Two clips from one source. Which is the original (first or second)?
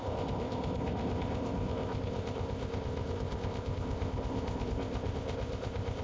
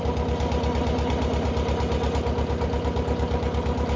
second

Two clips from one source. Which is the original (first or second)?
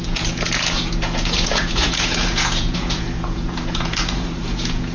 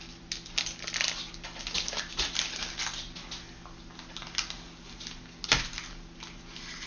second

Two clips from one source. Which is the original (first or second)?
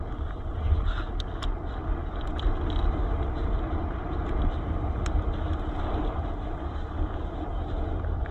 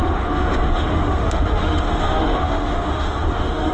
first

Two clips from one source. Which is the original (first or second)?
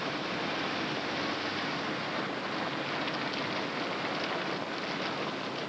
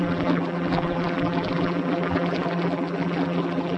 first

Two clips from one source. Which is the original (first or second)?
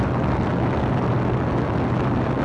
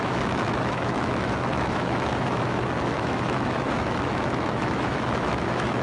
first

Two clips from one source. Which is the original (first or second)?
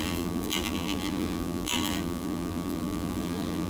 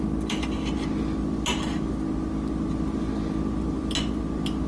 second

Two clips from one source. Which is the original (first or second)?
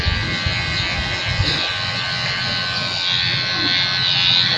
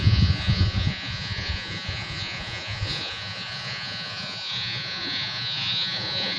first